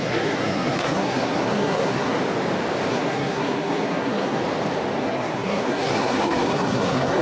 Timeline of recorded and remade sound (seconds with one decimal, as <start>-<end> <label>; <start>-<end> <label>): 0.0-2.2 remade; 2.2-2.9 recorded; 2.9-4.4 remade; 4.4-5.0 recorded; 5.0-7.2 remade